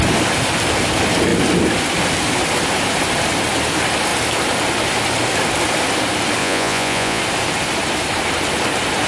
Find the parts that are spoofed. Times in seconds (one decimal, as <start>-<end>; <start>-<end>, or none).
6.4-7.2